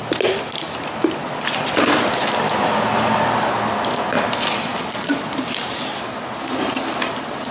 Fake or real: real